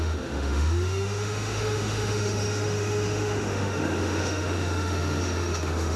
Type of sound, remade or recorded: remade